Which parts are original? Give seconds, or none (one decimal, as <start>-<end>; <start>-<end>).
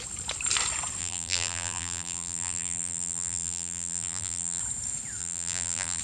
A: 0.0-1.0; 4.6-5.2